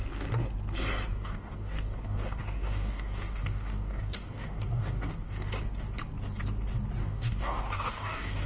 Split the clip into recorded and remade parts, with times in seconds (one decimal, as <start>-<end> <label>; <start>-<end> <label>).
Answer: 0.0-1.1 recorded; 1.1-5.6 remade; 5.6-7.0 recorded; 7.0-8.5 remade